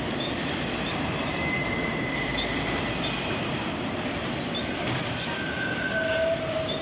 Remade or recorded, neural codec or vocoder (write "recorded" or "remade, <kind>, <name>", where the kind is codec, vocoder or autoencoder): recorded